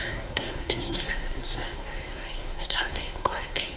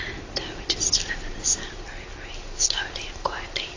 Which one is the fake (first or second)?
first